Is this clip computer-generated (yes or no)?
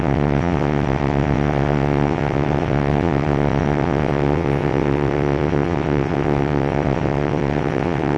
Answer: yes